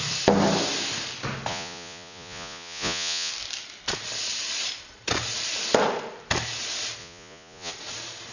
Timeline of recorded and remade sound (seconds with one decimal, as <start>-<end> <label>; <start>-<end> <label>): 0.0-1.5 recorded; 1.5-3.3 remade; 3.3-7.0 recorded; 7.0-7.7 remade; 7.7-8.3 recorded